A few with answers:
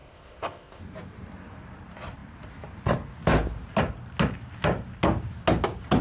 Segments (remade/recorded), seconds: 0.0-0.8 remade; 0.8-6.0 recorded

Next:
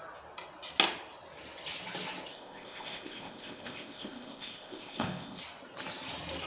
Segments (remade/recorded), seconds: 0.0-2.3 recorded; 2.3-5.4 remade; 5.4-6.5 recorded